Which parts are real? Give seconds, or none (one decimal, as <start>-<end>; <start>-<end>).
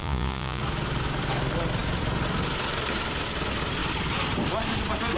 0.6-5.2